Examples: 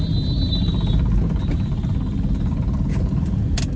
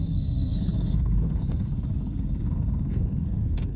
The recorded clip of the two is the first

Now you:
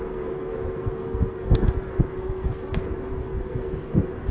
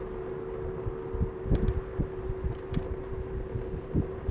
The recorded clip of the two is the second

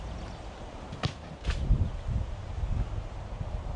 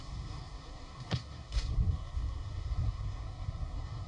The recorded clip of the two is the first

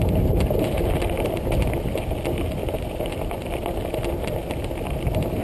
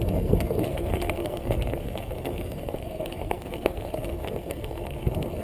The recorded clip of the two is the first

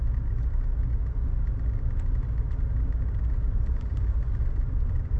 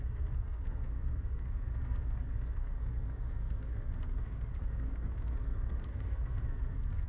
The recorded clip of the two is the first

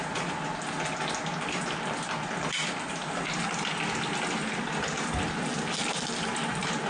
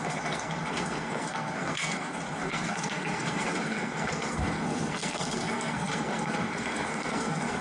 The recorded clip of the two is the first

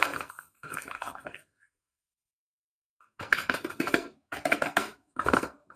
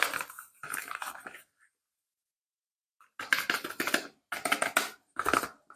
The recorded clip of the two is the second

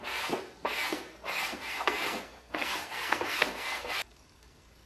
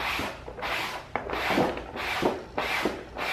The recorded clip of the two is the second